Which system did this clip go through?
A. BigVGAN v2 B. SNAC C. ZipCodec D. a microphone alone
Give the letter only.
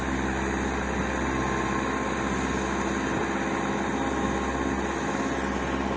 D